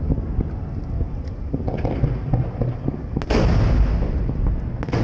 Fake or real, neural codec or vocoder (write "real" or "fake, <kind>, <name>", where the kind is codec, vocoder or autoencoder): real